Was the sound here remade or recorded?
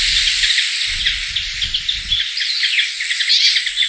recorded